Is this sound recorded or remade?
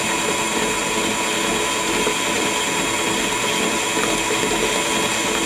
recorded